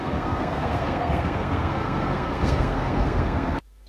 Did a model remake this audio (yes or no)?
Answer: yes